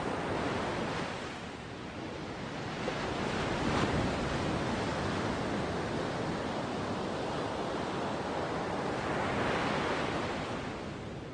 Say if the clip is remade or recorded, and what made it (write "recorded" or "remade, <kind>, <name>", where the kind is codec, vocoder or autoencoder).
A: recorded